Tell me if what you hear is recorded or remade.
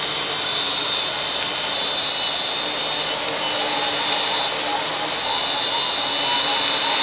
recorded